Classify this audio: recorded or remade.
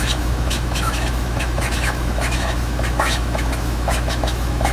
remade